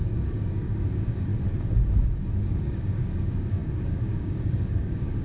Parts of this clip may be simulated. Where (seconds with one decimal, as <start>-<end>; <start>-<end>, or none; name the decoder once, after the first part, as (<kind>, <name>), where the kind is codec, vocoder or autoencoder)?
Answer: 0.0-1.3 (codec, DAC); 2.4-5.2